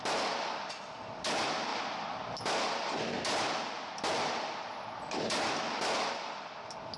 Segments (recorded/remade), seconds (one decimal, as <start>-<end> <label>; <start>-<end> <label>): 0.0-7.0 recorded